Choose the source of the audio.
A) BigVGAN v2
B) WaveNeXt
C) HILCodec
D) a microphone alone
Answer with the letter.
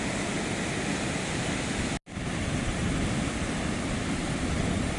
D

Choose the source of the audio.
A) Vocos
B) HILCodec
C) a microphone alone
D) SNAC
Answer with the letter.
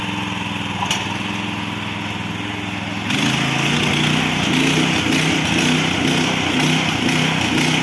C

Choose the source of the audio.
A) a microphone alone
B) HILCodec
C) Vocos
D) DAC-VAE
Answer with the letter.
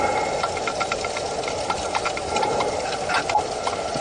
A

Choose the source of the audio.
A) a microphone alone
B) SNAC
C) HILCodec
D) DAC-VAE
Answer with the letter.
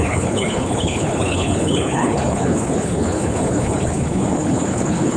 C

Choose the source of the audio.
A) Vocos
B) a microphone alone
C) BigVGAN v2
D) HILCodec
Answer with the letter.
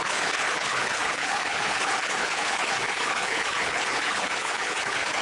D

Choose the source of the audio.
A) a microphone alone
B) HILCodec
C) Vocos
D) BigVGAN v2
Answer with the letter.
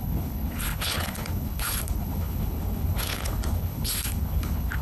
B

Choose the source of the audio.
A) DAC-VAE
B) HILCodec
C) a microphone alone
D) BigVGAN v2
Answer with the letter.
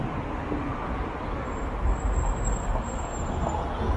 C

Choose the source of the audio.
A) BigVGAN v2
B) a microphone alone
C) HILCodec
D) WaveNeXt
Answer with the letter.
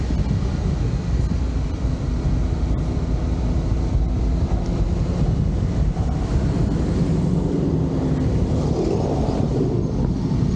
B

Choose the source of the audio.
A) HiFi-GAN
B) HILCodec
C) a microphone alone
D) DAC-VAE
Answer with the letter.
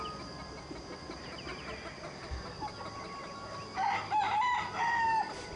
C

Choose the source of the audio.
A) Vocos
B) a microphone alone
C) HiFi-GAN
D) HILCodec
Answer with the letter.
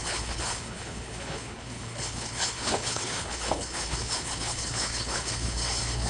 D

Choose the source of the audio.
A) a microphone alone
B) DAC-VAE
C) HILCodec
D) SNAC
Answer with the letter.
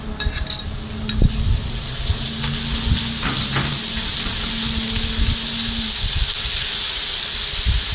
A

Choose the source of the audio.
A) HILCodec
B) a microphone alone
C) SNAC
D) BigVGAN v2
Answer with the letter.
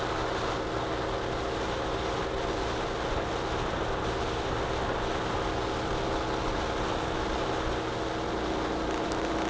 B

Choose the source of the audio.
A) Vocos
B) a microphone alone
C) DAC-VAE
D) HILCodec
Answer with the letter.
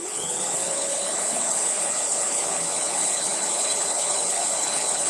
D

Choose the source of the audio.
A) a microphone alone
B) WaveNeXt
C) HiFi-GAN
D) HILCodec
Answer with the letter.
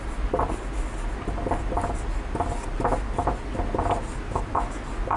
A